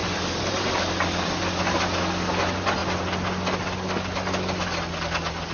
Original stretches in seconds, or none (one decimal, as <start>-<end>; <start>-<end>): 1.4-5.5